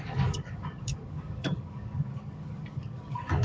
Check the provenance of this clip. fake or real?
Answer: fake